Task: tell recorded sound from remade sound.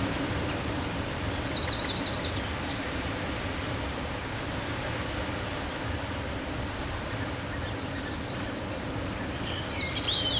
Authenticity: recorded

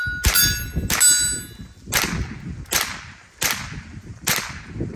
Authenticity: recorded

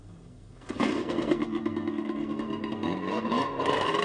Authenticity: remade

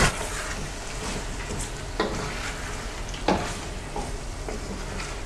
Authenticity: recorded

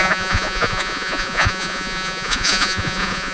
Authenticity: remade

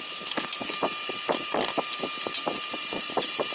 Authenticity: recorded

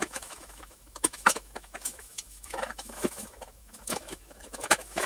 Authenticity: remade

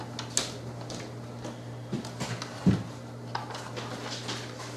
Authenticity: recorded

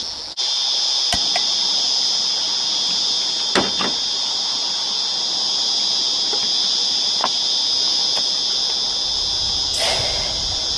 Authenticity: recorded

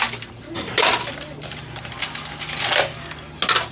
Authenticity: recorded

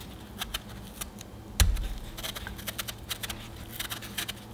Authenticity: recorded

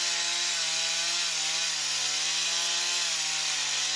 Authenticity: recorded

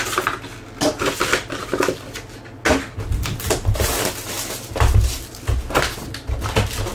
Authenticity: recorded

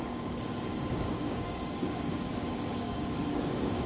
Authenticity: remade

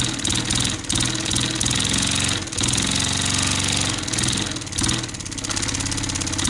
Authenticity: recorded